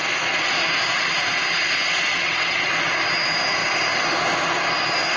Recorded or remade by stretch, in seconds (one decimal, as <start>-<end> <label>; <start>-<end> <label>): 0.0-2.1 recorded; 2.1-2.7 remade; 2.7-5.2 recorded